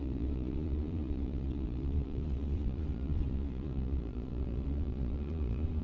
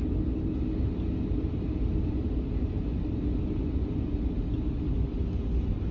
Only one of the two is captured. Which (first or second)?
second